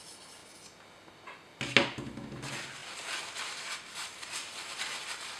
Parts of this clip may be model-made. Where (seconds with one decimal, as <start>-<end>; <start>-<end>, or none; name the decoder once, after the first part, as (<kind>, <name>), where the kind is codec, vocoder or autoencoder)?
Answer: none